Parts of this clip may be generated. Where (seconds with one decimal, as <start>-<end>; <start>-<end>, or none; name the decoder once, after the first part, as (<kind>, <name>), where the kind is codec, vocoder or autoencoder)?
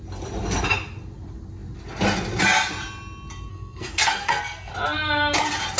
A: 3.5-4.7 (codec, SNAC)